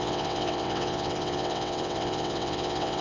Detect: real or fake fake